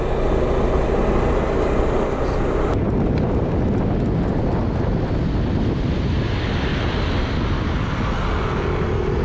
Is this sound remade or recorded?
recorded